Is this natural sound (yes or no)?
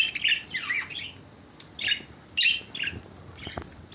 yes